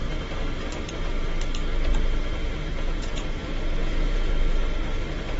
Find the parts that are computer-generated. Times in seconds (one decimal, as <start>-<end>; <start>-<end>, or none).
2.7-3.4; 3.8-4.3